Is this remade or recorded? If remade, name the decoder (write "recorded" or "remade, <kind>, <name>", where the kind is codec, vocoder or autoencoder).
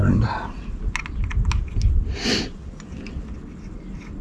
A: recorded